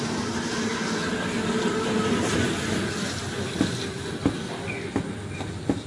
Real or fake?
real